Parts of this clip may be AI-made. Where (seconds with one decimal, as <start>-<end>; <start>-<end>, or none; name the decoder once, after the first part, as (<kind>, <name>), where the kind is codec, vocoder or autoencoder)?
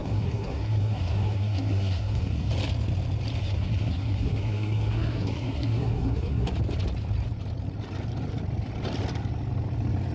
0.0-2.5 (codec, SNAC); 3.4-6.5